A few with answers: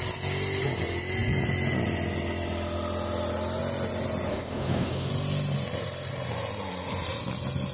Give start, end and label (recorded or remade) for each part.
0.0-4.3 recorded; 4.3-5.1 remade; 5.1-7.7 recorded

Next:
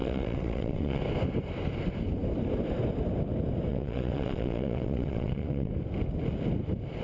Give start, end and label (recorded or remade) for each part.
0.0-1.0 remade; 1.0-3.7 recorded; 3.7-5.7 remade; 5.7-7.0 recorded

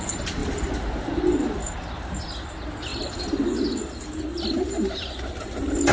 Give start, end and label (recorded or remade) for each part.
0.0-5.9 recorded

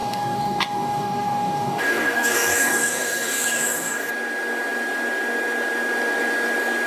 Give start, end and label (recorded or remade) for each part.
0.0-4.1 remade; 4.1-6.9 recorded